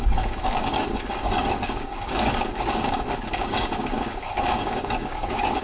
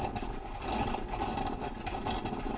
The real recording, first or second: second